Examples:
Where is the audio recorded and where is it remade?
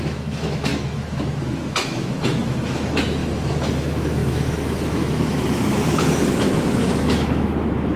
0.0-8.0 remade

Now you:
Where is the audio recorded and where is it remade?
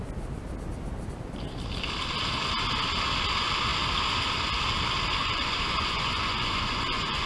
0.0-5.2 recorded; 5.2-7.3 remade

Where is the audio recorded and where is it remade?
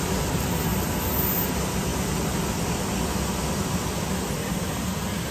0.0-5.3 recorded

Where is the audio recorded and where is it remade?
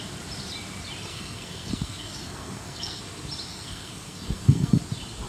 0.0-1.1 recorded; 1.1-3.0 remade; 3.0-3.5 recorded; 3.5-4.8 remade; 4.8-5.3 recorded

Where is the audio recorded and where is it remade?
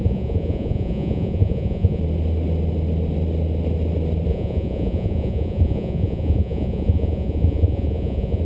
0.0-2.0 remade; 2.0-4.3 recorded; 4.3-8.4 remade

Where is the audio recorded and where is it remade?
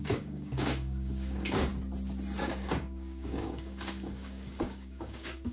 0.0-1.7 remade; 1.7-2.4 recorded; 2.4-5.5 remade